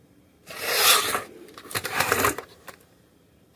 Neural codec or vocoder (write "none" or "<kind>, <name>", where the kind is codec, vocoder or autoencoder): vocoder, BigVGAN v2